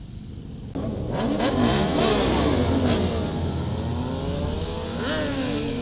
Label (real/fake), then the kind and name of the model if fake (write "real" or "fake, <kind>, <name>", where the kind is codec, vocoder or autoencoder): real